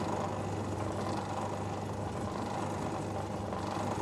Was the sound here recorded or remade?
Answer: recorded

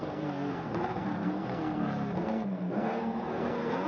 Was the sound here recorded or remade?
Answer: remade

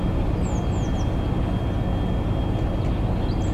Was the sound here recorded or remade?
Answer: recorded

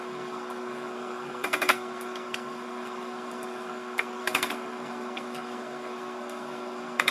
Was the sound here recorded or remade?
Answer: remade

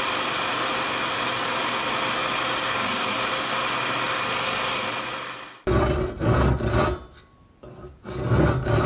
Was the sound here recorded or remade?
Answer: recorded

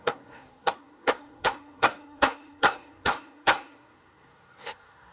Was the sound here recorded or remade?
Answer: remade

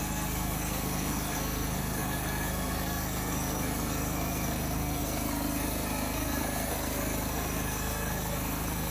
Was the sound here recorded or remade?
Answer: remade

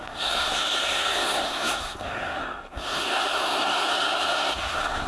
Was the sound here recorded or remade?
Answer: remade